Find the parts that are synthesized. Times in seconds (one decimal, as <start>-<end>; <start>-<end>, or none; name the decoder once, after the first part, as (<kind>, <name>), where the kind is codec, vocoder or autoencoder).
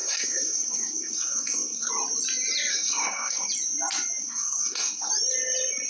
0.0-1.9 (codec, SNAC); 2.7-3.5; 4.2-5.1